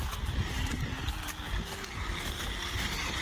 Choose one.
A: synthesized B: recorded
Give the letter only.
B